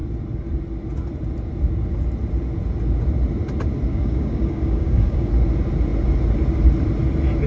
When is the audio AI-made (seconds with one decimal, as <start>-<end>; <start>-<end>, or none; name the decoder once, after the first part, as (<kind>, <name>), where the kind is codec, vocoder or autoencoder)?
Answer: 3.9-5.3 (codec, DAC)